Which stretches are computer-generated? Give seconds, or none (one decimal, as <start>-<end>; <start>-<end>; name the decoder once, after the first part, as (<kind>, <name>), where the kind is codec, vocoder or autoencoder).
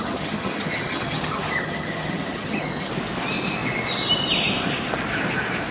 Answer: 0.0-2.9 (vocoder, HiFi-GAN)